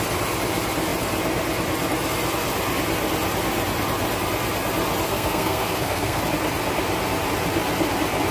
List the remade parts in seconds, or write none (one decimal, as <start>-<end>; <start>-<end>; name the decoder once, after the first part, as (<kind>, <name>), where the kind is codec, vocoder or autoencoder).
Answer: 5.1-6.2 (codec, SNAC)